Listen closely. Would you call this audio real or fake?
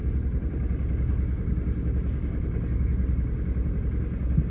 real